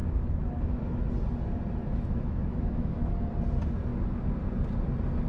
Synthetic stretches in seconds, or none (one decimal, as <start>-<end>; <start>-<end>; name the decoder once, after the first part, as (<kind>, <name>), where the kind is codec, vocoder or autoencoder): 0.0-1.1 (autoencoder, DAC-VAE); 1.8-3.3